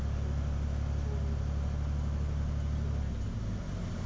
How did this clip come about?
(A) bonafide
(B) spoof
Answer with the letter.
A